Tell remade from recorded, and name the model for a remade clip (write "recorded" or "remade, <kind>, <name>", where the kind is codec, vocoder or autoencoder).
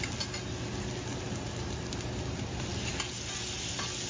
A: recorded